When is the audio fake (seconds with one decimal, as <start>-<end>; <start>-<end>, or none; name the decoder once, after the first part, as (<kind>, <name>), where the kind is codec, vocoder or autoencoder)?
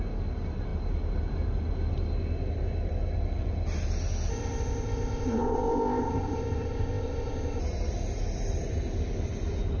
4.3-7.6 (codec, ZipCodec)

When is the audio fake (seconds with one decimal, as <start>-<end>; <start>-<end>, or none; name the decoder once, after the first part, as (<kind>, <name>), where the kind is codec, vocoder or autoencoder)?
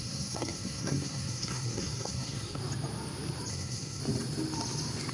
0.0-2.6 (codec, SNAC); 3.5-4.0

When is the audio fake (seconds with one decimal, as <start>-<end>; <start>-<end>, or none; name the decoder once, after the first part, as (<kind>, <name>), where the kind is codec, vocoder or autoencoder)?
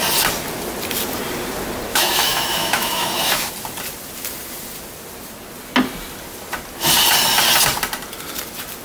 1.9-3.5 (autoencoder, DAC-VAE)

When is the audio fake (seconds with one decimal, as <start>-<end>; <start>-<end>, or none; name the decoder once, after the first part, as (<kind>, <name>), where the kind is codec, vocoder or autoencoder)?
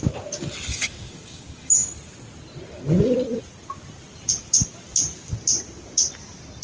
0.7-1.9 (codec, DAC)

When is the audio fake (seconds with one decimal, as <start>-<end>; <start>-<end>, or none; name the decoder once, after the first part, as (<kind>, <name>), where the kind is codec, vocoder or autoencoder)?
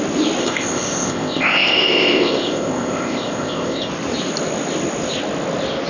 0.4-3.9 (codec, ZipCodec)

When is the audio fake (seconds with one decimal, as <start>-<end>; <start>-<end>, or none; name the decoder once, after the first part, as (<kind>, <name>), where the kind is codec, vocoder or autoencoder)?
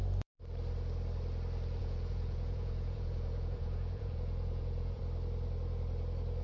1.8-5.0 (vocoder, Vocos)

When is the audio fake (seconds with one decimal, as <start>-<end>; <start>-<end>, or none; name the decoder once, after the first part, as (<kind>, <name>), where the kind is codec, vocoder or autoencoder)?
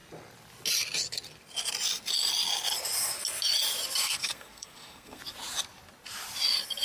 4.0-5.2 (codec, SNAC)